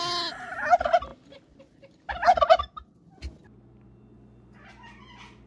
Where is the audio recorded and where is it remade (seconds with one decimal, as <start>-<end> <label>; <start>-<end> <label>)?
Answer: 0.0-5.5 recorded

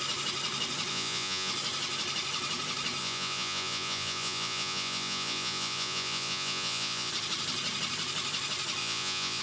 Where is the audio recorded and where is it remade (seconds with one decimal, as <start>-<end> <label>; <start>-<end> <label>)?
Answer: 0.0-0.9 recorded; 0.9-1.5 remade; 1.5-3.0 recorded; 3.0-7.1 remade; 7.1-8.8 recorded; 8.8-9.4 remade